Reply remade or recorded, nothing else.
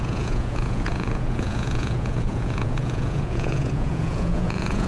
remade